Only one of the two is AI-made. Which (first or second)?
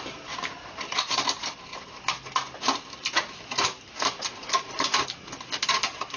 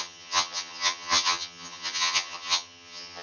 second